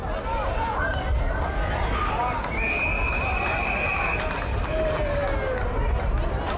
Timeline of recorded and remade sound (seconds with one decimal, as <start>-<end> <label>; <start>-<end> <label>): 0.0-0.5 recorded; 0.5-0.9 remade; 0.9-1.4 recorded; 1.4-2.2 remade; 2.2-2.8 recorded; 2.8-5.2 remade; 5.2-6.0 recorded; 6.0-6.6 remade